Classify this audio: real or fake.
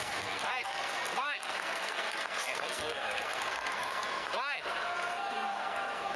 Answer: fake